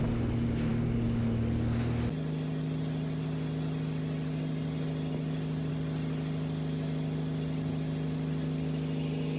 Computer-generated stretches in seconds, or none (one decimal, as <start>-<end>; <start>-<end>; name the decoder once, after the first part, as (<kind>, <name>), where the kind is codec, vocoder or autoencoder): none